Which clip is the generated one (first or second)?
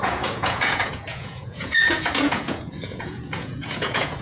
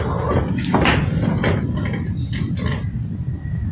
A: first